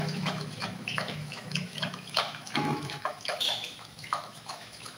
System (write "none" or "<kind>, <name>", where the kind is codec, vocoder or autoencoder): autoencoder, DAC-VAE